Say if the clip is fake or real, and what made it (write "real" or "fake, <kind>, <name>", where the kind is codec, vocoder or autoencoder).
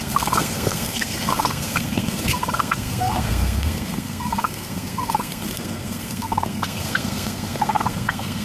fake, codec, SNAC